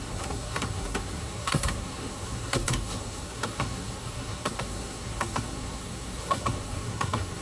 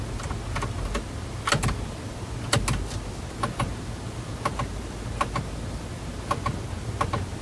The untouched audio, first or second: second